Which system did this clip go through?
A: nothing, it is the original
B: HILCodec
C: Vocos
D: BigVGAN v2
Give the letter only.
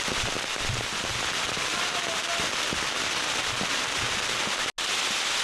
A